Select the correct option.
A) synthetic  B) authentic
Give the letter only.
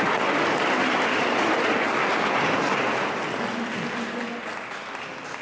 B